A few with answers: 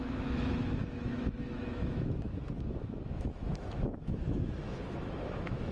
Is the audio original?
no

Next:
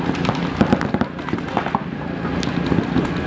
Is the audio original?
yes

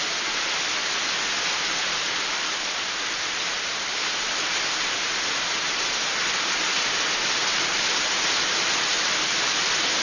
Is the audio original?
yes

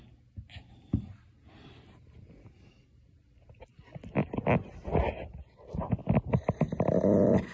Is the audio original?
yes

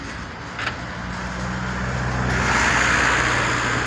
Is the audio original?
yes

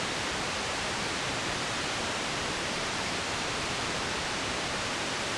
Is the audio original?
no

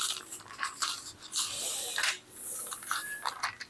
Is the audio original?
no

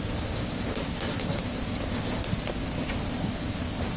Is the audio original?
yes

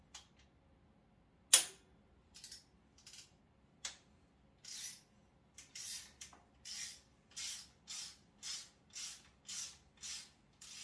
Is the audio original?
yes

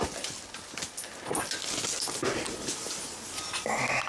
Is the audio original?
yes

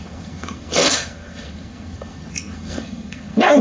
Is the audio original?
no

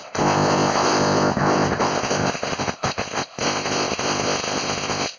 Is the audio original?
no